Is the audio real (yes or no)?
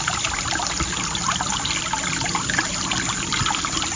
yes